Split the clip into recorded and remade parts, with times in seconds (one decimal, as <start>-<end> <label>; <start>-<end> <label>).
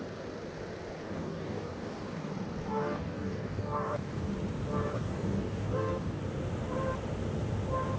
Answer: 0.0-1.0 recorded; 1.0-2.3 remade; 2.3-2.7 recorded; 2.7-4.3 remade; 4.3-4.9 recorded; 4.9-6.2 remade; 6.2-8.0 recorded